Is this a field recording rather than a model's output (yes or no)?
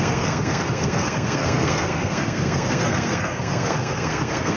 no